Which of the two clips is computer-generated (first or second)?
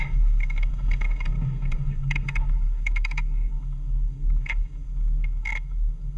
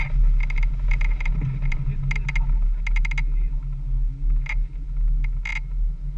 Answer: first